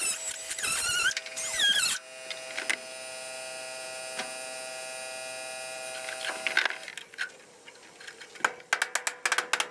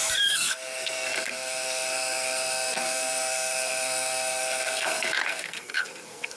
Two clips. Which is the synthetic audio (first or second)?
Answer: second